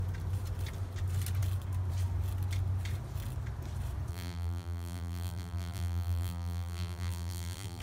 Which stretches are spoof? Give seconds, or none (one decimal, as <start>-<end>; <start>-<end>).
4.1-7.8